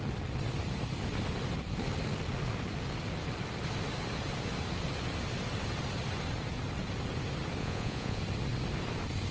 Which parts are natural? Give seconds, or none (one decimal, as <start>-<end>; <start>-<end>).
0.0-7.6; 8.2-9.3